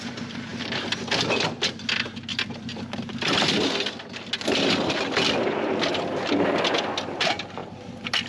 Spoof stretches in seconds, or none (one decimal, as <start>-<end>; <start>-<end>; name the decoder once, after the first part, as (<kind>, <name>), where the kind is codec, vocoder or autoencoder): none